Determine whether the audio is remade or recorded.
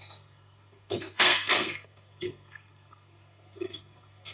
remade